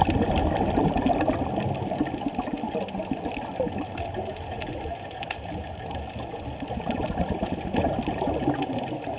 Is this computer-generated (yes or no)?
no